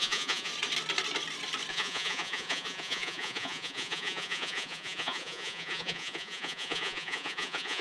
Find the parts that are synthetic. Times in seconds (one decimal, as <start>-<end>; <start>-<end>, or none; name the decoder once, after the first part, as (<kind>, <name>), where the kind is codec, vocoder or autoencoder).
0.0-0.5 (vocoder, Vocos); 1.7-7.8